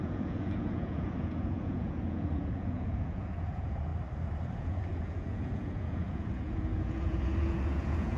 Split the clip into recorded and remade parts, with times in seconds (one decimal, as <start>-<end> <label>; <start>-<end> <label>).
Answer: 0.0-3.9 remade; 3.9-4.6 recorded; 4.6-8.2 remade